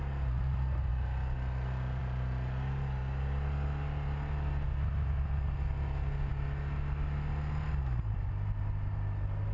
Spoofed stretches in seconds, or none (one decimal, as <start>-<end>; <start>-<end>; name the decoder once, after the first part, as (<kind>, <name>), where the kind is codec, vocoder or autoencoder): none